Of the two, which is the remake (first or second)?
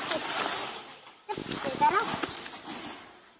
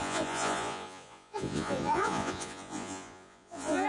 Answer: second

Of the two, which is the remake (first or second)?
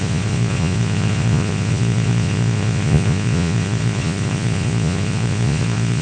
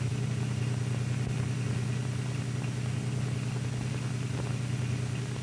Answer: first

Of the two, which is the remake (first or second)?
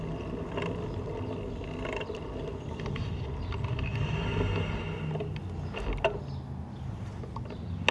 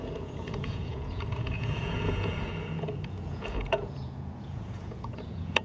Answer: second